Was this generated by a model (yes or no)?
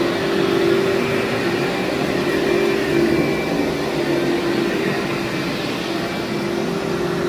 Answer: no